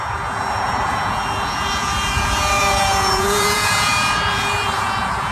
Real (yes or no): no